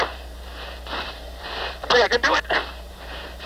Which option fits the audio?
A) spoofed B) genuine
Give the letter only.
A